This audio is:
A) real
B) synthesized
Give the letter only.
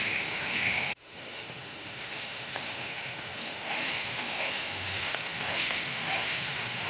B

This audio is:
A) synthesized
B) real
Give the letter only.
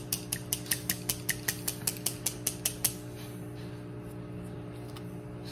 B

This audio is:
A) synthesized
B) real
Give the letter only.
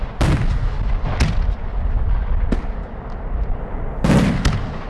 B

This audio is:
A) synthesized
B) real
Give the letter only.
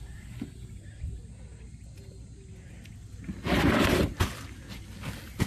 B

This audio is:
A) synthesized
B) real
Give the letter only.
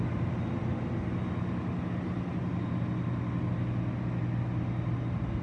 B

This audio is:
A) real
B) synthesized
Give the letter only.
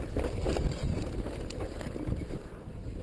A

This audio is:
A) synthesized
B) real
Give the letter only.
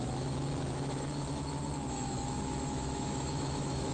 A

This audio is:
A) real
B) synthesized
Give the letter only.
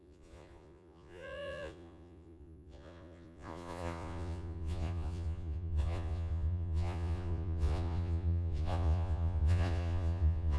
B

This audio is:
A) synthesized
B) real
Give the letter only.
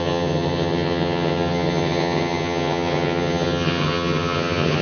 A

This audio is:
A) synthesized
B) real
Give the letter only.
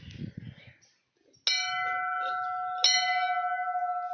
B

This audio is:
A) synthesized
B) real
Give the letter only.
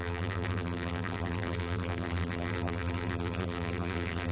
A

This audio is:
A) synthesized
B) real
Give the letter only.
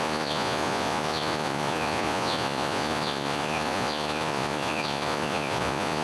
A